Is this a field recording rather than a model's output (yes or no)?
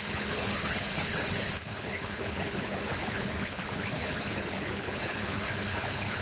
no